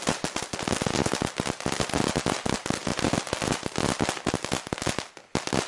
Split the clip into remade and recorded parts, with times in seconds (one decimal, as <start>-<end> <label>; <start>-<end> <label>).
0.0-5.7 recorded